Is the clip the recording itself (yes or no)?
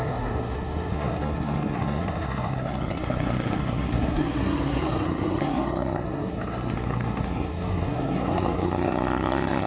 no